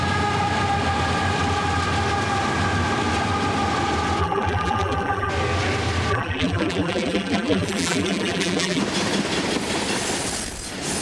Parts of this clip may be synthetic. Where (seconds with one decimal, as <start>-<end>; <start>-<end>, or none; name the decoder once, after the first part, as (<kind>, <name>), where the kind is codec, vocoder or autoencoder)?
4.2-5.3 (vocoder, BigVGAN v2); 6.1-8.8